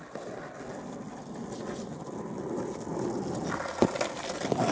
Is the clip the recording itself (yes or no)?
yes